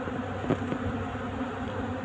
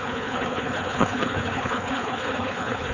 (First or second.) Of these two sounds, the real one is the first